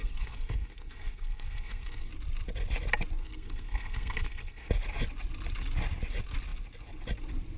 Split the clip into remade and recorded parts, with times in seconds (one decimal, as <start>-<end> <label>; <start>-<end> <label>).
0.0-2.1 remade; 2.1-3.2 recorded; 3.2-4.7 remade; 4.7-7.6 recorded